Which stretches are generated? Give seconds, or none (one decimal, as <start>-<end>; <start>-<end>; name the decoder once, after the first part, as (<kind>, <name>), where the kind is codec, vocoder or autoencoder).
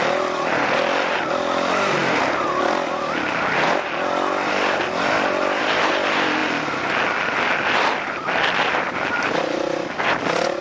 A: none